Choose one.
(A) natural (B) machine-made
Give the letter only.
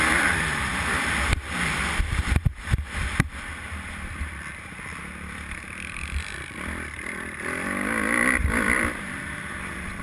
B